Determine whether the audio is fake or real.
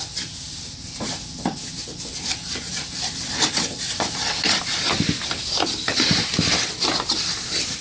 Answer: real